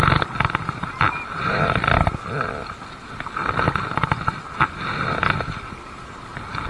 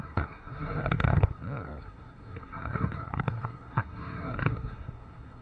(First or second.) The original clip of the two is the first